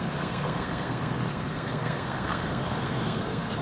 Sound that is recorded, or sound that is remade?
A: remade